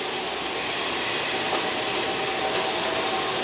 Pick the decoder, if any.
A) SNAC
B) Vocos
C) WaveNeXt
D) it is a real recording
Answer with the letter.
D